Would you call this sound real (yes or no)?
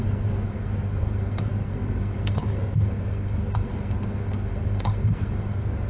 no